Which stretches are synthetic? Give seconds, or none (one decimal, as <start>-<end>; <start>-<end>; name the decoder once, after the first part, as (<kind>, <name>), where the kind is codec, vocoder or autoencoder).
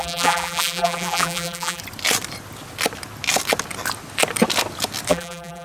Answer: 0.0-1.8 (vocoder, BigVGAN v2); 5.1-5.6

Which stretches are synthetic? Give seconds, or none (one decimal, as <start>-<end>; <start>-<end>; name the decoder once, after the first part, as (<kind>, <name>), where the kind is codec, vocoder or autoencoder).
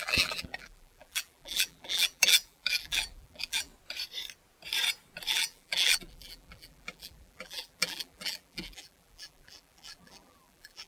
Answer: 0.0-3.7 (vocoder, BigVGAN v2); 5.3-10.9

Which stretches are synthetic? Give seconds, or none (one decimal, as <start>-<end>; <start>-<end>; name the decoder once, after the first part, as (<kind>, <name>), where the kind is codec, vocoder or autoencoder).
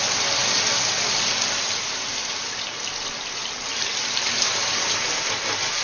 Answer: 2.2-2.9 (vocoder, BigVGAN v2); 3.4-5.0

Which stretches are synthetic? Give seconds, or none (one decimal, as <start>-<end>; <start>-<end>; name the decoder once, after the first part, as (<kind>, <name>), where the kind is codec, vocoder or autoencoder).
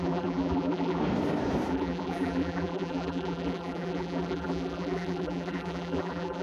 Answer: 0.0-1.0 (vocoder, BigVGAN v2); 1.7-6.4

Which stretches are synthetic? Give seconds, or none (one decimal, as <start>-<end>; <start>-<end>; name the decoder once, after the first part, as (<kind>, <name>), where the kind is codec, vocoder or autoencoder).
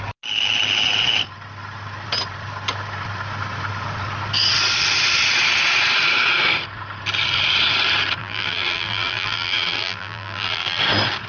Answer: 8.2-10.8 (vocoder, BigVGAN v2)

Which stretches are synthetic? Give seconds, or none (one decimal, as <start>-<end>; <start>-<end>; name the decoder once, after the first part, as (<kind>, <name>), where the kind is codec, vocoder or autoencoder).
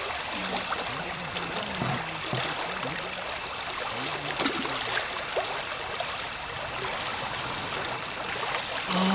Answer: none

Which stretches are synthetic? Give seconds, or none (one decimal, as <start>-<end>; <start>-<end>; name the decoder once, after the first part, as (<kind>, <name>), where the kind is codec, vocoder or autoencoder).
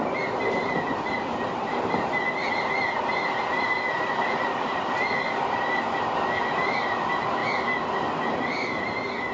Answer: none